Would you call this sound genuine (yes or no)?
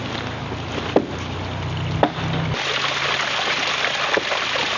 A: yes